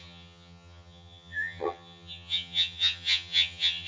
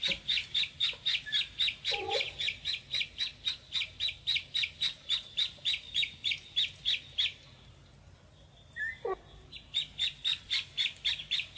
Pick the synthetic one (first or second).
first